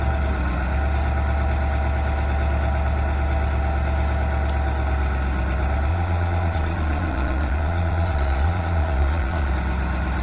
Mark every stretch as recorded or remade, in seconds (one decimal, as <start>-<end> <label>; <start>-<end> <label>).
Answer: 0.0-5.9 recorded; 5.9-9.5 remade; 9.5-10.2 recorded